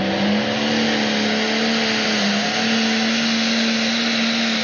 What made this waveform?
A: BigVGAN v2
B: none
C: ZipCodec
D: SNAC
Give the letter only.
B